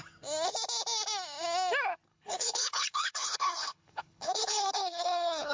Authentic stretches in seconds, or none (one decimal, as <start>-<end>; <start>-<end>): 0.0-2.1